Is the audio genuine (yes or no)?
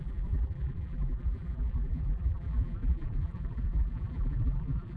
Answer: no